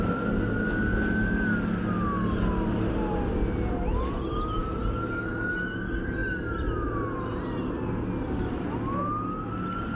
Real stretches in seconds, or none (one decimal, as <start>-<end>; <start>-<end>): 0.0-10.0